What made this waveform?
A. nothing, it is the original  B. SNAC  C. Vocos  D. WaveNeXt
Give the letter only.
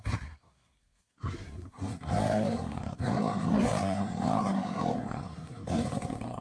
B